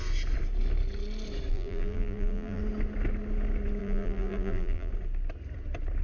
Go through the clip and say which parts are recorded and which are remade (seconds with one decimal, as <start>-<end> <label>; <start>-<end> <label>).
0.0-1.5 recorded; 1.5-2.6 remade; 2.6-3.8 recorded; 3.8-4.9 remade; 4.9-6.0 recorded

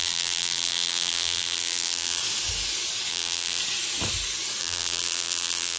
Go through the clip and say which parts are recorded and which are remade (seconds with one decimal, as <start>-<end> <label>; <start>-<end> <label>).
0.0-2.2 remade; 2.2-3.1 recorded; 3.1-3.6 remade; 3.6-4.6 recorded; 4.6-5.8 remade

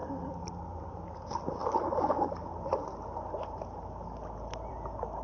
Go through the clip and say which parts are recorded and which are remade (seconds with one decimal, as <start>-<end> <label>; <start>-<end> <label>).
0.0-5.2 recorded